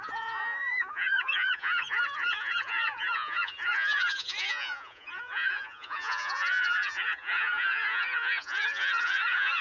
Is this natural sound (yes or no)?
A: no